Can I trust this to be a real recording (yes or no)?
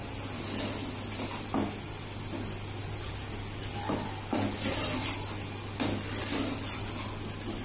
yes